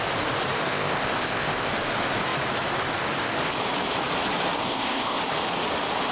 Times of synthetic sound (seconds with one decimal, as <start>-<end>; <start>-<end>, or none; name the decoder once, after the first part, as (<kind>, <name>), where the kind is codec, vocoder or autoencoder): 0.7-1.7 (codec, ZipCodec); 4.6-5.2